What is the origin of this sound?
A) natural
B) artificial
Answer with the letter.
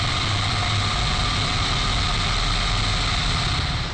A